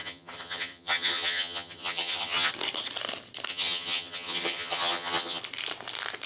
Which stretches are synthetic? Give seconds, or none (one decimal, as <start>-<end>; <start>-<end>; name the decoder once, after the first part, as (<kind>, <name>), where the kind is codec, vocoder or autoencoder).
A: 0.0-2.5 (vocoder, HiFi-GAN); 3.5-5.4